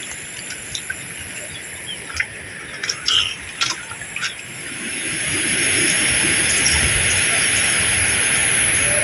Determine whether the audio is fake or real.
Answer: real